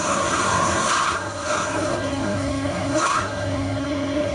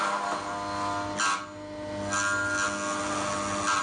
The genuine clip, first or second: second